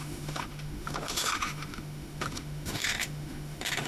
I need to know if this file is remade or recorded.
remade